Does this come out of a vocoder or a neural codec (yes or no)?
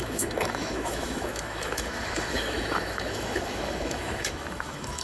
yes